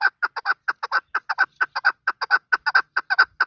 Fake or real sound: real